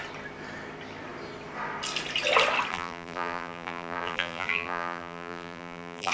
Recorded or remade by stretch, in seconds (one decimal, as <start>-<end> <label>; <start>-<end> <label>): 0.0-2.7 recorded; 2.7-6.1 remade